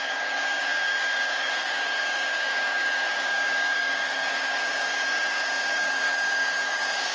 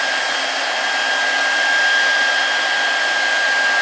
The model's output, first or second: first